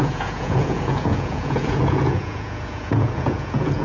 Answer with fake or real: fake